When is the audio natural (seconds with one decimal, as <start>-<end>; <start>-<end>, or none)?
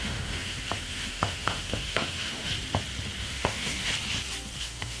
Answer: 2.5-3.2; 3.9-4.6